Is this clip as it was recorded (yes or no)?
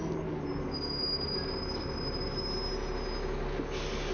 yes